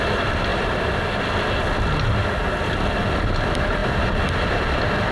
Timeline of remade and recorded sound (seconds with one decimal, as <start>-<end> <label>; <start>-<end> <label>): 0.0-0.5 recorded; 0.5-1.3 remade; 1.3-5.1 recorded